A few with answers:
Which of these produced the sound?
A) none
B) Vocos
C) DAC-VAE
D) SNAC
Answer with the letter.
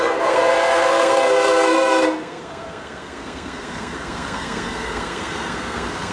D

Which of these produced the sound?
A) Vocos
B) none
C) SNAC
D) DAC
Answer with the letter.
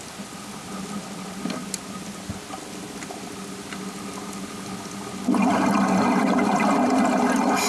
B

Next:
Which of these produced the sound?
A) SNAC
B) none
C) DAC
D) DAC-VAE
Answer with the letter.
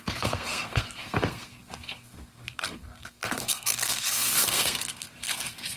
A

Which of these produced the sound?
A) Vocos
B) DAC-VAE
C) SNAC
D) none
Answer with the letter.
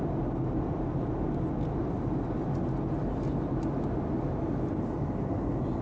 D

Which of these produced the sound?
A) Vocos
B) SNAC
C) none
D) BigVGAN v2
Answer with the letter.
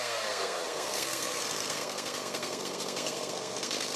B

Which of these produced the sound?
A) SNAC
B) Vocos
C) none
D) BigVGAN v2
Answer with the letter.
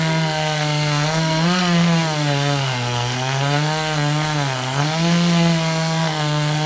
A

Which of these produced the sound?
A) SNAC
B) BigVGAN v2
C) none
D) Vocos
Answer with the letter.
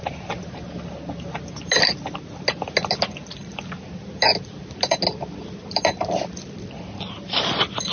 C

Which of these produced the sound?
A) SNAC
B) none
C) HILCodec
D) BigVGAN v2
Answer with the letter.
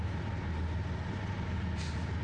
B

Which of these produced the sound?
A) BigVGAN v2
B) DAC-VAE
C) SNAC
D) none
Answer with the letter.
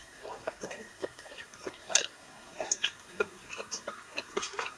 C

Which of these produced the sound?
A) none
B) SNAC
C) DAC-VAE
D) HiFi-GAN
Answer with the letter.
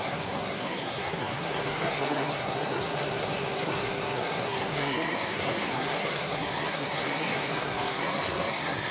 B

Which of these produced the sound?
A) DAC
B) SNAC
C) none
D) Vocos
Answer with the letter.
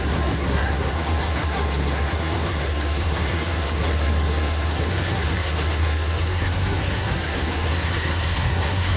B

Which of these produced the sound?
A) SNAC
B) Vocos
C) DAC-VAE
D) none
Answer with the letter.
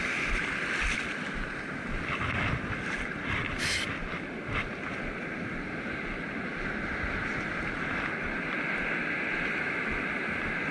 D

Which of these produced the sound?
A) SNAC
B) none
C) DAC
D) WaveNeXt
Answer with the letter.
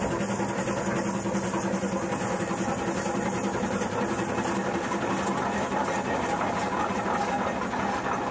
B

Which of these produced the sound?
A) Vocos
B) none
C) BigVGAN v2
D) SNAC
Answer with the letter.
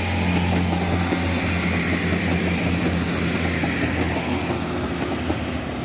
B